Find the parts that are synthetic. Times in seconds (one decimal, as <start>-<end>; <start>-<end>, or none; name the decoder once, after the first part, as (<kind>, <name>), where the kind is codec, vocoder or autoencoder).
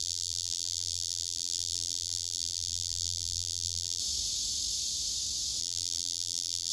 0.0-4.0 (vocoder, BigVGAN v2); 5.6-6.7